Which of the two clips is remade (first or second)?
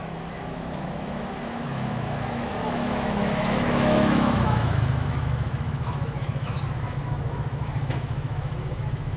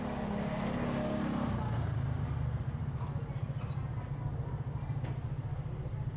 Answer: first